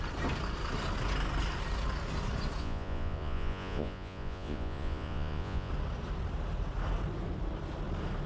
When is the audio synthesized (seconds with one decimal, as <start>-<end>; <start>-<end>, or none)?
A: 2.6-5.7